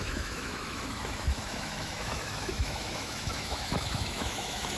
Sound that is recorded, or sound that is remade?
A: remade